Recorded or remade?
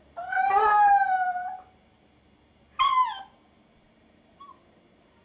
recorded